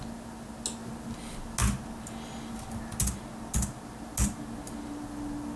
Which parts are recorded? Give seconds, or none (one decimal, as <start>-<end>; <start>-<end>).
0.0-5.6